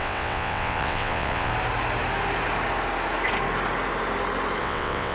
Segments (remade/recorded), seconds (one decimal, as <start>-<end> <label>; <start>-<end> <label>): 0.0-1.5 remade; 1.5-4.6 recorded; 4.6-5.1 remade